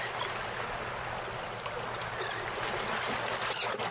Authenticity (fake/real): real